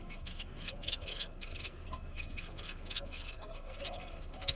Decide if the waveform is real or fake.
fake